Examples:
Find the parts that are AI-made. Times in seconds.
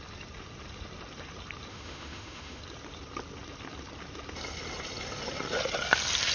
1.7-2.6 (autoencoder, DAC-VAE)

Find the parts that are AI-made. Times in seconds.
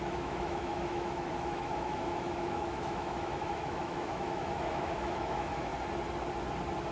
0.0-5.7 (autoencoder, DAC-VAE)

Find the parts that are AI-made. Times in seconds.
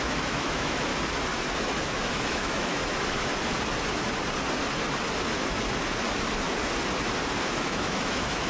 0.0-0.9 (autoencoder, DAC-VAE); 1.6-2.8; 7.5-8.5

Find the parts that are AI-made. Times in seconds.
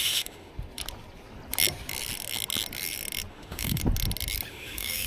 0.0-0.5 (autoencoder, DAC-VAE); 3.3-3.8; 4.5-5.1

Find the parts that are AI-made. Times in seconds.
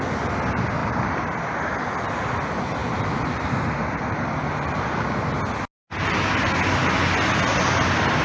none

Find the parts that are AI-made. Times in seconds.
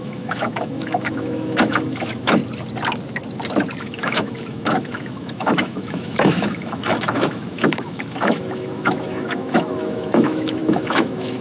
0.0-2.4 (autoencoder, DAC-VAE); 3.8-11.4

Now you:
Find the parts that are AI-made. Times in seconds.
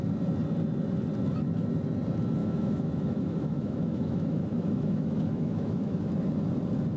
2.4-6.1 (autoencoder, DAC-VAE)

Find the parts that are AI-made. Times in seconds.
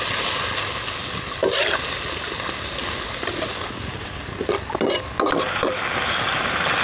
none